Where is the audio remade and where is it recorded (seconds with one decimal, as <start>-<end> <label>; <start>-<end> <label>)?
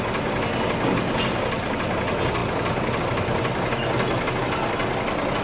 0.0-5.4 recorded